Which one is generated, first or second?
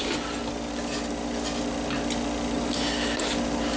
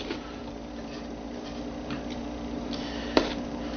second